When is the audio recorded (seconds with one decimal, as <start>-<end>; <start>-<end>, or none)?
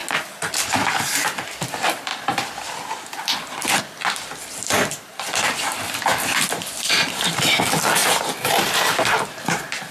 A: 0.0-0.7